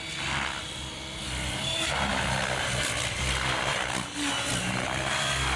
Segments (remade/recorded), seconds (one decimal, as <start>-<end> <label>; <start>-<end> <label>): 0.0-0.6 recorded; 0.6-1.6 remade; 1.6-2.1 recorded; 2.1-3.7 remade; 3.7-4.5 recorded; 4.5-5.6 remade